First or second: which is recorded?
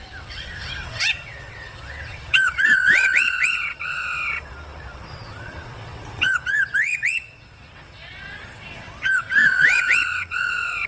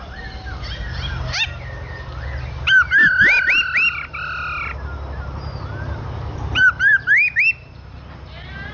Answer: second